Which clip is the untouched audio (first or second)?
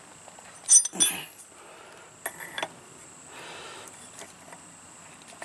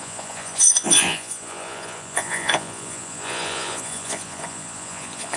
first